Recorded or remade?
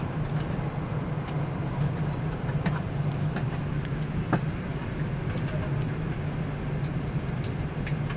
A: recorded